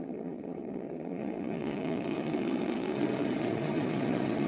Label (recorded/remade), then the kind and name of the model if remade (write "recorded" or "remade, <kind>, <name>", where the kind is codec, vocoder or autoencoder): remade, vocoder, Vocos